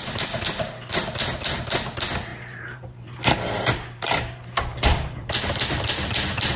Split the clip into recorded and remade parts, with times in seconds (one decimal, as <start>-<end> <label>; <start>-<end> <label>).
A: 0.0-2.3 recorded; 2.3-5.3 remade; 5.3-6.6 recorded